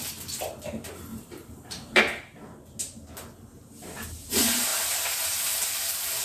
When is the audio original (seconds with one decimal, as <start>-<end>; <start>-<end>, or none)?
0.0-1.1; 2.0-6.2